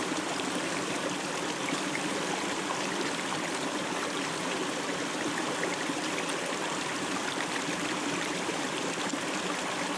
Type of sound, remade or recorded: remade